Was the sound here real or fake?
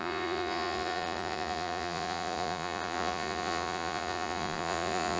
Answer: fake